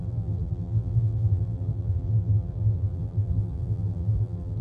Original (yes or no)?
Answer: no